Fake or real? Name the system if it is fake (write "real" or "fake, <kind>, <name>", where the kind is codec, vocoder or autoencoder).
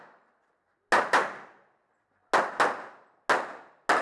real